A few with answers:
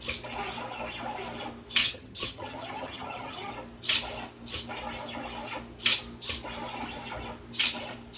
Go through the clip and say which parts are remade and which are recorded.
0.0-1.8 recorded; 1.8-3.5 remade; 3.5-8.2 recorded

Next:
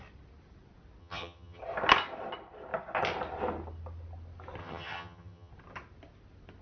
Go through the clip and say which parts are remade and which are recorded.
0.0-1.0 recorded; 1.0-1.6 remade; 1.6-4.6 recorded; 4.6-5.5 remade; 5.5-6.6 recorded